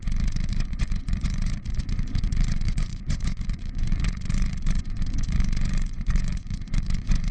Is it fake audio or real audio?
fake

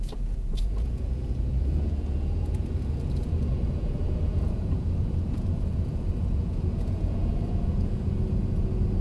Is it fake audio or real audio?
fake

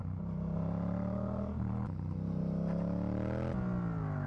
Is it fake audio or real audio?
real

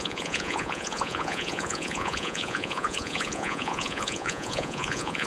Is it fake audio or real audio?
fake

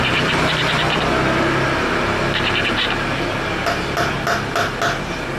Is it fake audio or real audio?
real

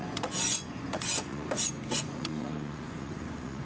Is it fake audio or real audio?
fake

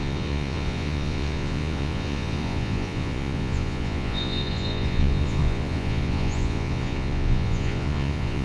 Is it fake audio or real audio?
fake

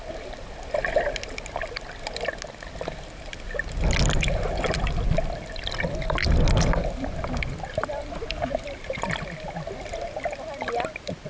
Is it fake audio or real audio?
real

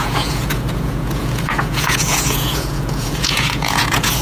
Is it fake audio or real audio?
fake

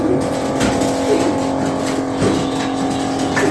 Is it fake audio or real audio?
real